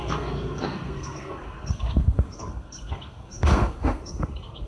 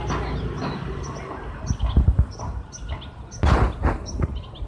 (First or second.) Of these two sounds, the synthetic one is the first